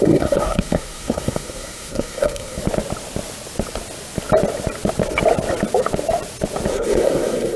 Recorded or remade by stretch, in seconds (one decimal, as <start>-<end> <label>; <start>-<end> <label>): 0.0-2.6 remade; 2.6-6.7 recorded; 6.7-7.6 remade